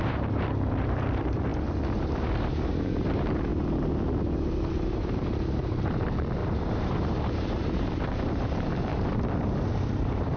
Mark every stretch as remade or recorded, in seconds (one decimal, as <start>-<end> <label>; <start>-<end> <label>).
0.0-1.5 remade; 1.5-2.7 recorded; 2.7-3.5 remade; 3.5-4.7 recorded; 4.7-8.9 remade; 8.9-9.7 recorded; 9.7-10.4 remade